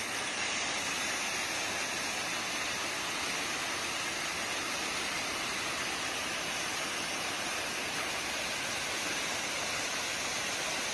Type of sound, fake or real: real